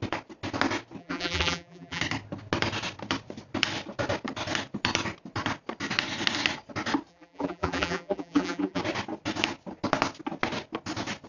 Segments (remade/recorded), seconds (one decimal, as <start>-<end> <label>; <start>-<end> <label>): 0.0-1.0 recorded; 1.0-2.0 remade; 2.0-7.1 recorded; 7.1-8.8 remade; 8.8-11.3 recorded